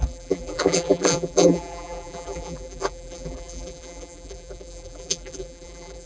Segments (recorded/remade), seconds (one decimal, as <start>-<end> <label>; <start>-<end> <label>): 0.0-6.1 remade